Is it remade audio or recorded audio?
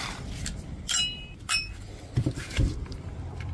remade